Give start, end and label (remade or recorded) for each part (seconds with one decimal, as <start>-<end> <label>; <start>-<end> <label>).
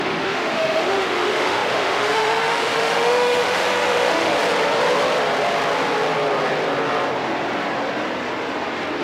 0.0-4.3 remade; 4.3-9.0 recorded